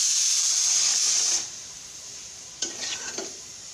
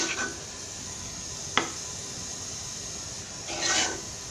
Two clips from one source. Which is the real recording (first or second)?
second